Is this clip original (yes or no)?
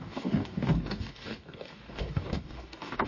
no